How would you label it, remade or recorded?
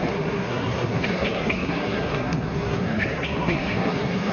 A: remade